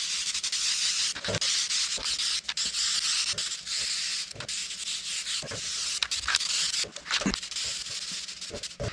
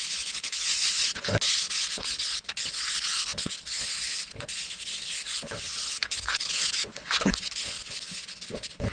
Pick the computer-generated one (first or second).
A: second